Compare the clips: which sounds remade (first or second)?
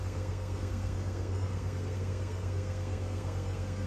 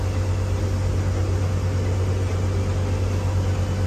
first